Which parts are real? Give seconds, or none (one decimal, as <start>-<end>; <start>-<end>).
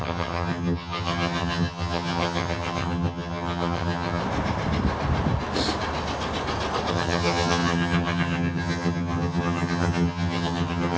4.2-6.9